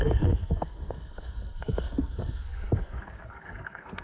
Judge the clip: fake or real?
fake